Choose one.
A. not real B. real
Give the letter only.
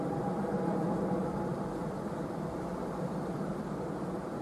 A